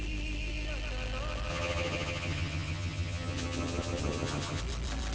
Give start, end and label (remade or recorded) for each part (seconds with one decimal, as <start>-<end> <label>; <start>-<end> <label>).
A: 0.0-1.5 recorded; 1.5-4.6 remade; 4.6-5.1 recorded